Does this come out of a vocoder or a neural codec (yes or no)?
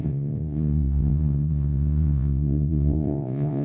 yes